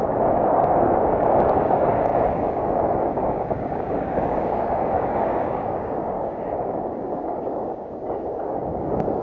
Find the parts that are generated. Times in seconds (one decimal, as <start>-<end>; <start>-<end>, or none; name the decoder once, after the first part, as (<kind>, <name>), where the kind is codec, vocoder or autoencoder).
0.0-9.2 (codec, DAC)